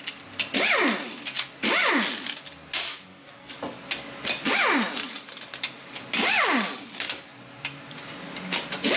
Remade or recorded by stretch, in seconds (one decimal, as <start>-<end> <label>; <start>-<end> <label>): 0.0-2.8 recorded; 2.8-3.5 remade; 3.5-9.0 recorded

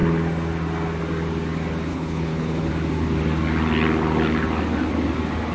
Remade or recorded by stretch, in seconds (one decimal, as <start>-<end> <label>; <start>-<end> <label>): 0.0-1.9 recorded; 1.9-2.7 remade; 2.7-5.5 recorded